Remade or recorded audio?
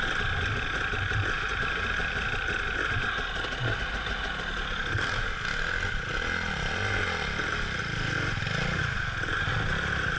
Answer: recorded